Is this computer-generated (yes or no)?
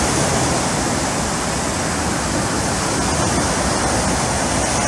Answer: no